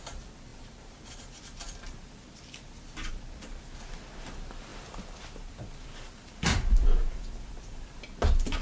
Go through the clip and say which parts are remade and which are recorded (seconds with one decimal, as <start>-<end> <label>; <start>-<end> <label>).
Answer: 0.0-4.7 recorded; 4.7-8.0 remade; 8.0-8.6 recorded